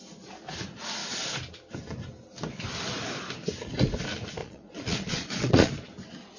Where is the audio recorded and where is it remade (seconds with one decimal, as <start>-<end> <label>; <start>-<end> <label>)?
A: 0.0-4.4 recorded; 4.4-5.7 remade; 5.7-6.4 recorded